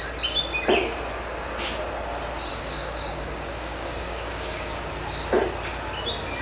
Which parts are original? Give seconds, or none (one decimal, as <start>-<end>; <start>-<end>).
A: 0.0-2.5; 4.9-6.4